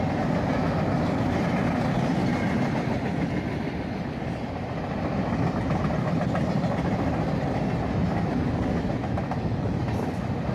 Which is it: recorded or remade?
recorded